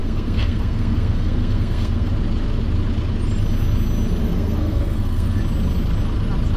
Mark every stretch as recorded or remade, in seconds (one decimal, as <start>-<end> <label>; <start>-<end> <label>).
0.0-2.1 remade; 2.1-4.2 recorded; 4.2-5.4 remade; 5.4-6.6 recorded